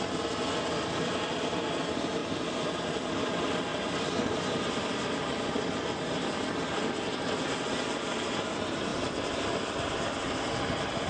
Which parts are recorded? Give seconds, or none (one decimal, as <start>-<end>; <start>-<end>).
0.0-2.2; 3.1-3.7; 6.5-8.9